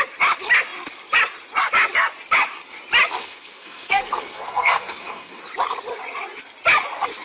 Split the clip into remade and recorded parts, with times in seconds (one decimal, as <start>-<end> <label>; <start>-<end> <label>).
0.0-3.2 recorded; 3.2-5.3 remade; 5.3-7.2 recorded